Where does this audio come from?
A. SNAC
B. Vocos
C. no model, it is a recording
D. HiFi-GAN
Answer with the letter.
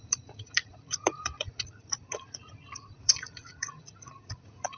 B